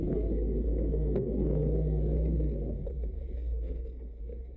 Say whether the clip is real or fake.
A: fake